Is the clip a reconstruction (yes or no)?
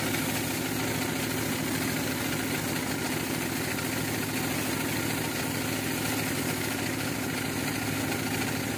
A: no